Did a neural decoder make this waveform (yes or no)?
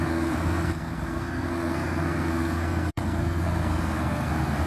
yes